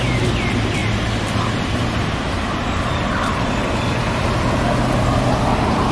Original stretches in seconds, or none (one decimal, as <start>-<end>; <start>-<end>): 0.0-0.8; 4.3-5.9